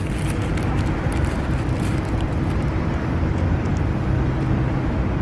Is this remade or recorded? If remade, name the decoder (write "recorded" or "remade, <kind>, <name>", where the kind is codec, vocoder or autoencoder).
recorded